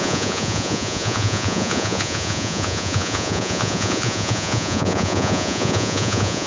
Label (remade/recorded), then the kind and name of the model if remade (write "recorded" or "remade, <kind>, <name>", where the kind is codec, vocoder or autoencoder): remade, vocoder, Vocos